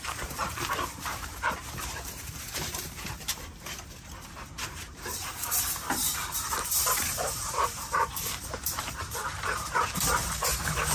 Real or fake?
fake